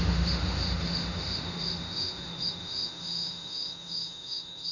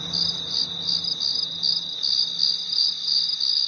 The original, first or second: second